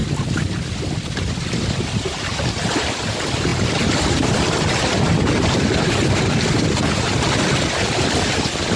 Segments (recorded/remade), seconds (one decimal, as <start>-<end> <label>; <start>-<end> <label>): 0.0-8.8 recorded